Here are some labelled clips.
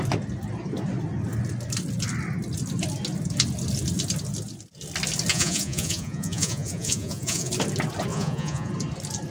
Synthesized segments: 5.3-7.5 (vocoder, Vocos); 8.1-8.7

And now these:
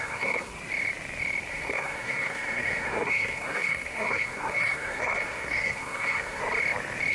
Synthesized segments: 0.0-0.5 (codec, SNAC); 1.5-6.4

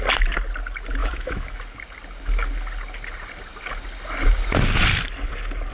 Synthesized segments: 1.0-1.6 (autoencoder, DAC-VAE)

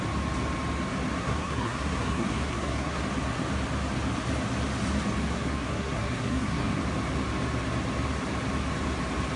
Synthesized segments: 1.2-3.0 (codec, SNAC); 5.2-6.8

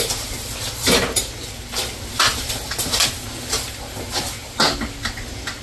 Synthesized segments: none

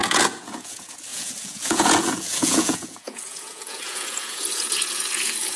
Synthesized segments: 0.0-5.6 (vocoder, Vocos)

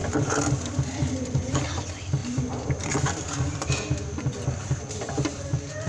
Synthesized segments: 0.0-5.9 (vocoder, BigVGAN v2)